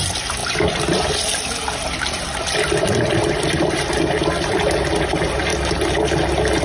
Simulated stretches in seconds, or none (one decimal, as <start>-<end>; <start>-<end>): 0.0-6.6